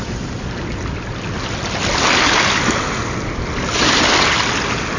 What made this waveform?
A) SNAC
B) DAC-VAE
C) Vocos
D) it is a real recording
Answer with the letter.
D